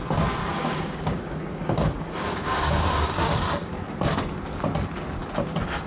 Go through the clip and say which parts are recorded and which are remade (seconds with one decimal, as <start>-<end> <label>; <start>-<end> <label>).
0.0-0.4 recorded; 0.4-3.9 remade; 3.9-5.9 recorded